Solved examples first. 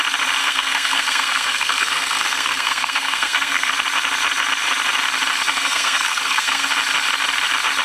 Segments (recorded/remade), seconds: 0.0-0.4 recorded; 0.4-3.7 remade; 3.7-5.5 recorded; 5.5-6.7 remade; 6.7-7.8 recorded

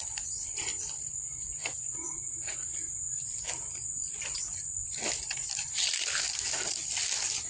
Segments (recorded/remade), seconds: 0.0-7.5 recorded

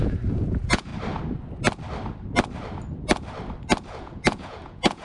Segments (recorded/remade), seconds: 0.0-0.9 remade; 0.9-3.9 recorded; 3.9-5.0 remade

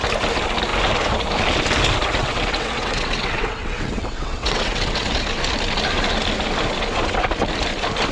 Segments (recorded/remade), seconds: 0.0-2.2 recorded; 2.2-5.1 remade; 5.1-8.1 recorded

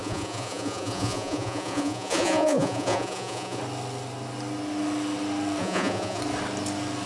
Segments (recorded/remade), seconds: 0.0-3.6 remade; 3.6-5.6 recorded; 5.6-6.2 remade; 6.2-7.1 recorded

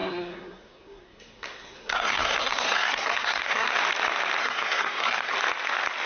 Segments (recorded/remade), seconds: 0.0-3.7 remade; 3.7-4.4 recorded; 4.4-5.3 remade; 5.3-6.1 recorded